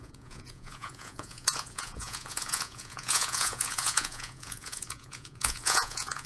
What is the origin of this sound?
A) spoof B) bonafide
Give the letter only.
A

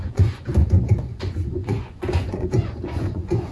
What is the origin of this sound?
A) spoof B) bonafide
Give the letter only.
A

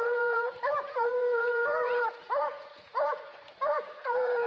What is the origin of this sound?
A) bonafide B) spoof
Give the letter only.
B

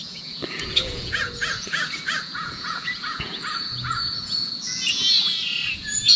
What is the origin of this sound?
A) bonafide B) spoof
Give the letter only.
B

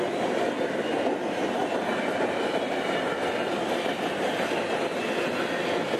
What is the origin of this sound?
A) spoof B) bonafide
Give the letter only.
B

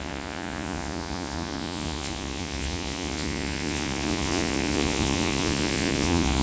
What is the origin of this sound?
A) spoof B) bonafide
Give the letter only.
A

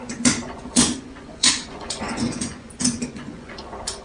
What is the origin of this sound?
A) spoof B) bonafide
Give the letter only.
A